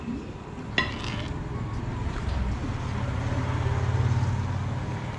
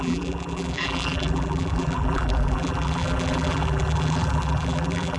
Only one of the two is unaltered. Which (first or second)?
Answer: first